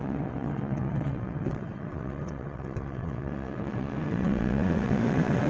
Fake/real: fake